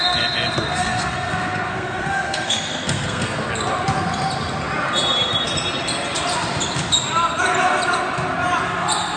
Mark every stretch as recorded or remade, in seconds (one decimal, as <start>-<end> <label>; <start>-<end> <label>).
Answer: 0.0-0.8 recorded; 0.8-3.5 remade; 3.5-9.2 recorded

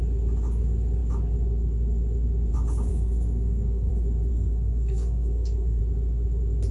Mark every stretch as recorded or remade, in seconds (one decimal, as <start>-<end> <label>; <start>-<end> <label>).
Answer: 0.0-2.9 recorded; 2.9-3.9 remade; 3.9-4.3 recorded; 4.3-5.8 remade; 5.8-6.7 recorded

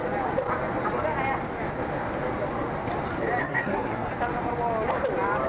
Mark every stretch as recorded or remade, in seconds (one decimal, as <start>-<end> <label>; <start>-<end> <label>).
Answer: 0.0-3.4 recorded; 3.4-4.1 remade; 4.1-5.5 recorded

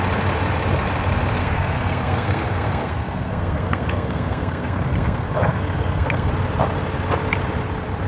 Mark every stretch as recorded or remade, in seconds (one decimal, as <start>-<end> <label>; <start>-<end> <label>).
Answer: 0.0-1.4 recorded; 1.4-6.3 remade; 6.3-8.1 recorded

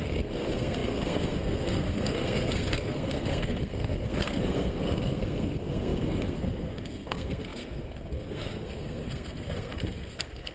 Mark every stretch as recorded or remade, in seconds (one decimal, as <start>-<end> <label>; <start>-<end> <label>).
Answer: 0.0-10.5 remade